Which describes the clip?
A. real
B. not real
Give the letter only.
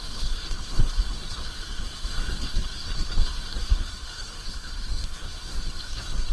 B